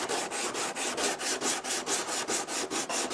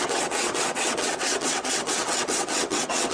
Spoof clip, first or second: second